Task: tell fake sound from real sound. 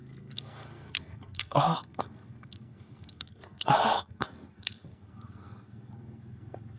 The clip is fake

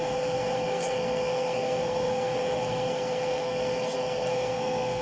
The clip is fake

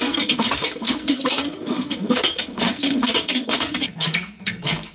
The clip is fake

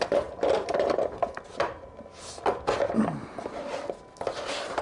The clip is real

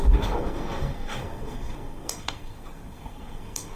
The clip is fake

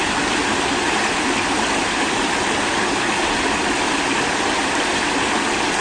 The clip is real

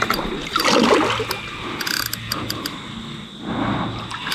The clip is real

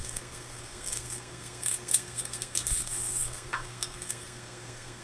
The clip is fake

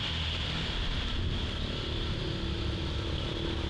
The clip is real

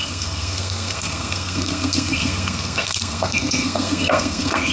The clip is fake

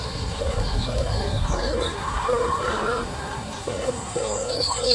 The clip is fake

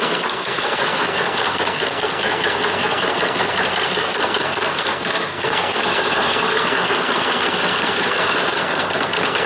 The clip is fake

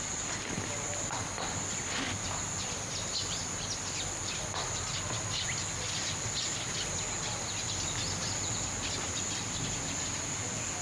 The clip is real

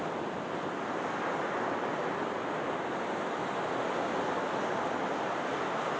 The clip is real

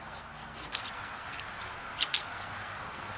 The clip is fake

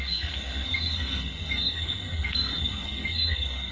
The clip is fake